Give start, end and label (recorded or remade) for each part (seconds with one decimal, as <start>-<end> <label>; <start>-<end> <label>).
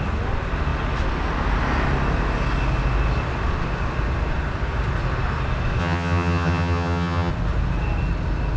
0.0-5.8 recorded; 5.8-7.3 remade; 7.3-8.6 recorded